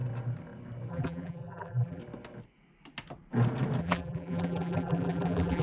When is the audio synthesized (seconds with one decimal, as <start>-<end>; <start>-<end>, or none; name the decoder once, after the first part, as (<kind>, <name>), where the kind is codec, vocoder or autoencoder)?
0.9-2.0 (vocoder, BigVGAN v2); 3.8-5.6